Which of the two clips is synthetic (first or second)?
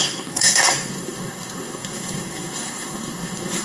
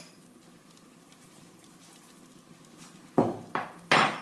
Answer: first